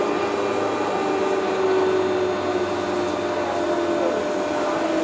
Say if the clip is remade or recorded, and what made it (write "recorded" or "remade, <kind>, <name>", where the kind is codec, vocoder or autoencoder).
recorded